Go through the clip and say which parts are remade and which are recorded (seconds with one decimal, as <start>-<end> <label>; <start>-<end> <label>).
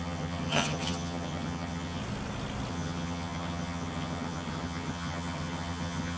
0.0-2.0 remade; 2.0-2.7 recorded; 2.7-6.2 remade